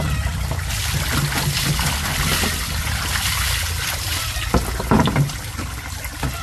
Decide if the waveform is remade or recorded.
recorded